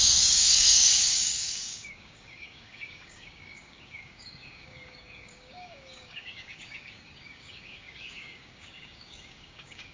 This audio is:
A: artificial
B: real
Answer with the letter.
A